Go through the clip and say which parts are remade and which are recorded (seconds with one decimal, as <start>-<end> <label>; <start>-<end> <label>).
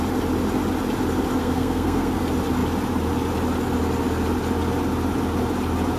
0.0-1.4 recorded; 1.4-2.2 remade; 2.2-6.0 recorded